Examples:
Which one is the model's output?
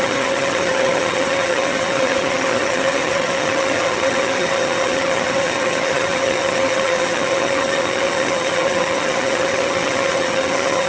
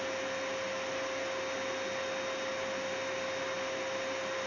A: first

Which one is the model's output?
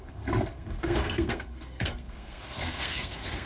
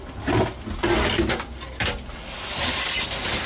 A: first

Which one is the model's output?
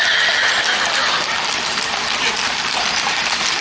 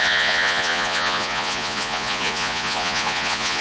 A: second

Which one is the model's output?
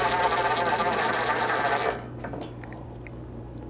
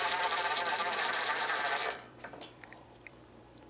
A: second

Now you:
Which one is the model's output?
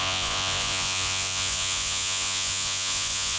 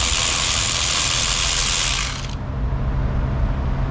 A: first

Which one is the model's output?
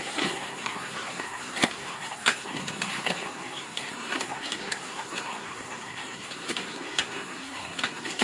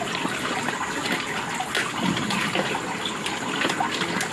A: first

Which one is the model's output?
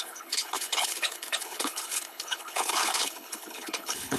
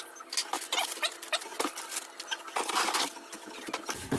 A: first